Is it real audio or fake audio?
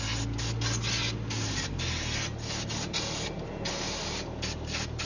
real